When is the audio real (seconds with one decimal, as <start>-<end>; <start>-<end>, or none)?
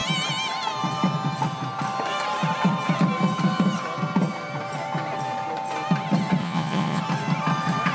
0.0-6.4; 7.0-7.9